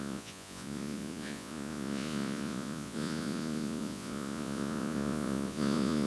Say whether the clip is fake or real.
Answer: fake